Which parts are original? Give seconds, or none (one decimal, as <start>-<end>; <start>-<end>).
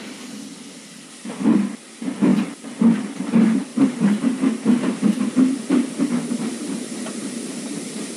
0.0-3.7